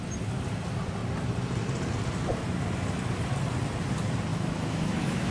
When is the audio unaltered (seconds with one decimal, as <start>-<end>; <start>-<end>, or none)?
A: 0.0-4.3